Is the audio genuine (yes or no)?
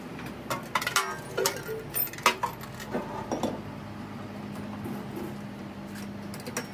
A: yes